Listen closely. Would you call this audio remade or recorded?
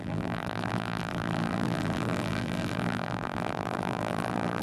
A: remade